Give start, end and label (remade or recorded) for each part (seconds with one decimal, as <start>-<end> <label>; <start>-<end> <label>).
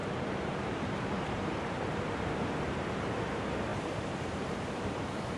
0.0-5.4 remade